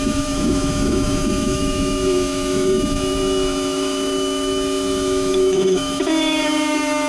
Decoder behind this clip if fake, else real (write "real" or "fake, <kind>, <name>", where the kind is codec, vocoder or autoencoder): fake, autoencoder, DAC-VAE